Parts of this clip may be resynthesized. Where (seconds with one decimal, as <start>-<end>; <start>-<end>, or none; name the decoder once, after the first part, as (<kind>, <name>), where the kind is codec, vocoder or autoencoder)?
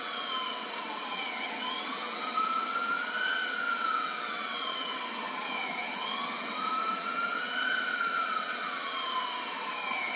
0.0-10.2 (vocoder, WaveNeXt)